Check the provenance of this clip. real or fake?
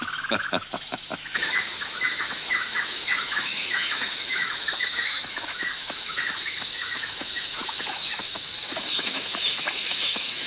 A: fake